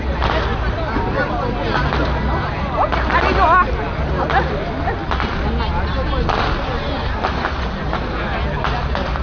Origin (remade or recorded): recorded